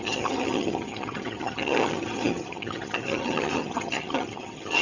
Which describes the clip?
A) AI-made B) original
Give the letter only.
A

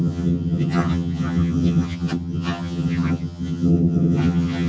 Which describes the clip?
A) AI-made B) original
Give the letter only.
A